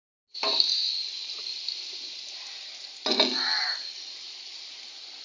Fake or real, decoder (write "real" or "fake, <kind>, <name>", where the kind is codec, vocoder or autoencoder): real